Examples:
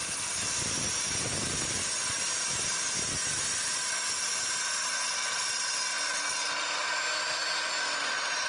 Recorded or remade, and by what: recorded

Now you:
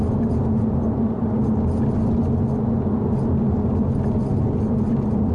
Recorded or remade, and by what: recorded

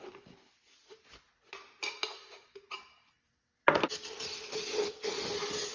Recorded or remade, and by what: recorded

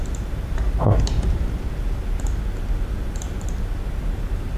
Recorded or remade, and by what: recorded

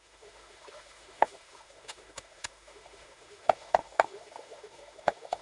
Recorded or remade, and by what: remade, autoencoder, DAC-VAE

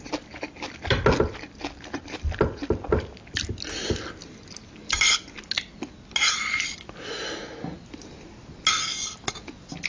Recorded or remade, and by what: recorded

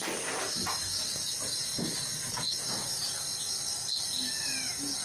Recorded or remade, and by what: recorded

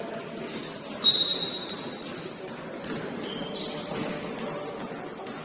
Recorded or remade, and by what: recorded